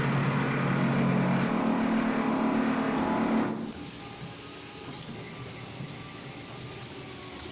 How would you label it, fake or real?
real